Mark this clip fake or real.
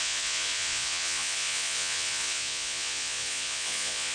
fake